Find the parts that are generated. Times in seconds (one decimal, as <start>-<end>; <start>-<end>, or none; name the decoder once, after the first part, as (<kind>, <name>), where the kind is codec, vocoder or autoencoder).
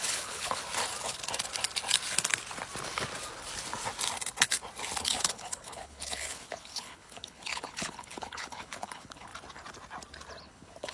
0.0-0.6 (codec, HILCodec); 5.0-9.3; 10.4-10.9